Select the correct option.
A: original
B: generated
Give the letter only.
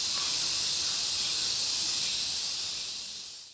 A